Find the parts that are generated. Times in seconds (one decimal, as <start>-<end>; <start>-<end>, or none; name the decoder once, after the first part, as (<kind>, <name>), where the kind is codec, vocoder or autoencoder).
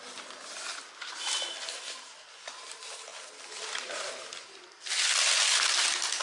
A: none